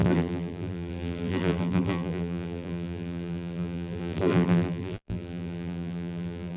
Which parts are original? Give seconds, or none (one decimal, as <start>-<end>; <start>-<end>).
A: none